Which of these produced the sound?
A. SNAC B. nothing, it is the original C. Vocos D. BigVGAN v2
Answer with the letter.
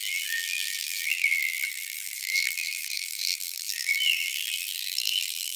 D